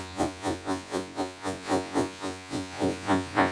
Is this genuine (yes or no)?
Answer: no